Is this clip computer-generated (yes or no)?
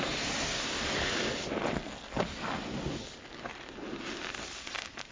no